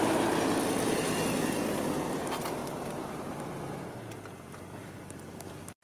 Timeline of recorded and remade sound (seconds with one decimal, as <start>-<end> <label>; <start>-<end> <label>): 0.0-2.6 recorded; 2.6-3.4 remade; 3.4-5.8 recorded